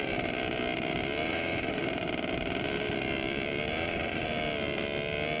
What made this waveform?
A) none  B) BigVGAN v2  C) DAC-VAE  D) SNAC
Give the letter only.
A